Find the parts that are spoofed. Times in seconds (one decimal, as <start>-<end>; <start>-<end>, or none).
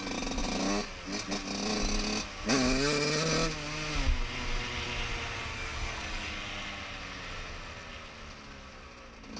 5.5-6.4